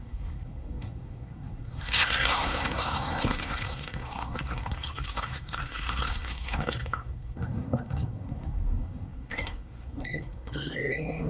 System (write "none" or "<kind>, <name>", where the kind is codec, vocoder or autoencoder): codec, SNAC